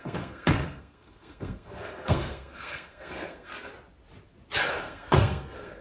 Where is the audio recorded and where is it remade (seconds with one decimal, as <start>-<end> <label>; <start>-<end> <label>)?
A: 0.0-3.7 remade; 3.7-4.7 recorded; 4.7-5.8 remade